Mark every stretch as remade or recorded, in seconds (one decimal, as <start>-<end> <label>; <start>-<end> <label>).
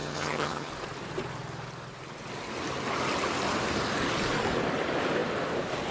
0.0-0.7 remade; 0.7-5.9 recorded